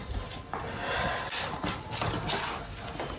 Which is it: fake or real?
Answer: real